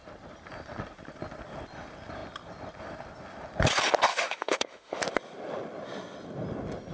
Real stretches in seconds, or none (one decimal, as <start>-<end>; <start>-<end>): 0.0-4.1; 5.0-6.9